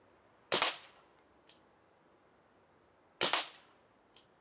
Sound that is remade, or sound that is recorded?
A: recorded